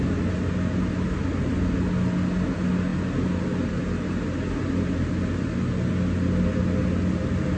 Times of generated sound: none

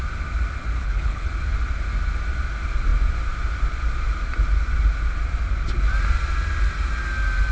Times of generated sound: 0.8-1.3 (codec, HILCodec)

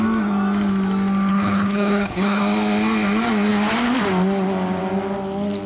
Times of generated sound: 1.3-2.4 (codec, HILCodec)

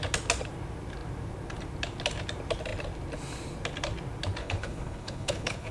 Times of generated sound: 4.4-5.7 (codec, HILCodec)

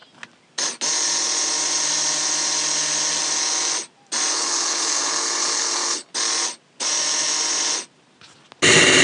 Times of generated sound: 4.3-6.1 (codec, HILCodec)

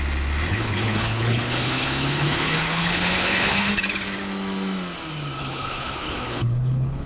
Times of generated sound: 0.5-3.7 (codec, HILCodec); 5.4-7.1